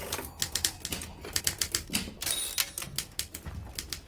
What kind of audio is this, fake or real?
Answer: real